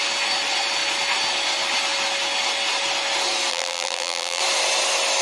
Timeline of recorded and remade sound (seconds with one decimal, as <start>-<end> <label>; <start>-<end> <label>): 0.0-3.5 recorded; 3.5-4.4 remade; 4.4-5.2 recorded